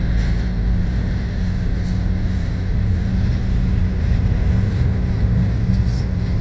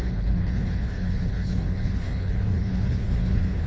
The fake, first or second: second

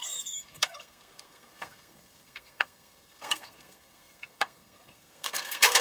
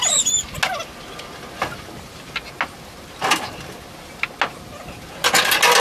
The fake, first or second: first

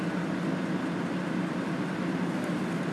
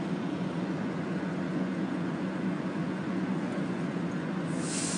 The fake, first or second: second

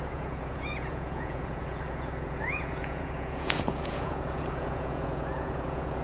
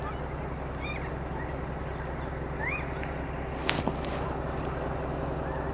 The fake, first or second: first